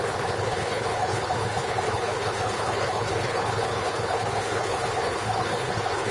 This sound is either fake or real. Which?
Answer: fake